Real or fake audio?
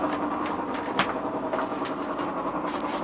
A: real